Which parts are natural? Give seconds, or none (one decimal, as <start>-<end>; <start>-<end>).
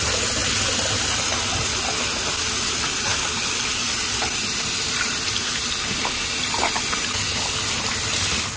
0.0-8.6